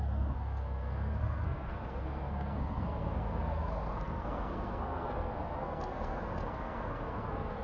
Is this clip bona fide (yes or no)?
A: no